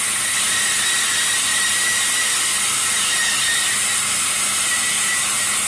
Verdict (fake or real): real